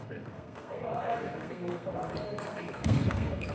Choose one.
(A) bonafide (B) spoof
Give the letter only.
B